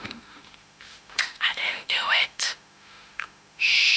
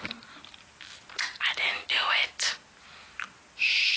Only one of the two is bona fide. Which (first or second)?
second